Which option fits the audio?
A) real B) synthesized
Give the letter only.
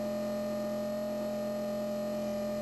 A